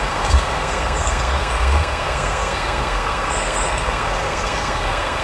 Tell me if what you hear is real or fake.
fake